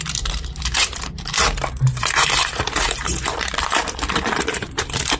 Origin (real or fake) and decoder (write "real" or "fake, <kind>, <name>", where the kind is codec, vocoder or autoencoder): fake, vocoder, BigVGAN v2